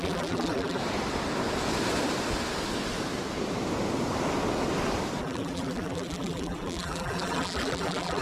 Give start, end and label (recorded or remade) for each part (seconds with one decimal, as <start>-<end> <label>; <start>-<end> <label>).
0.0-0.8 remade; 0.8-5.2 recorded; 5.2-8.2 remade